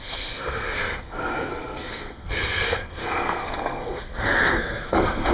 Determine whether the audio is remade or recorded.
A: remade